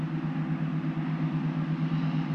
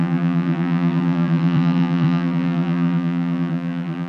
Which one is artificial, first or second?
second